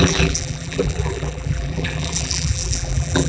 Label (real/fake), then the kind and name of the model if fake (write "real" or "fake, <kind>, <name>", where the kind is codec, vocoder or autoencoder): fake, vocoder, BigVGAN v2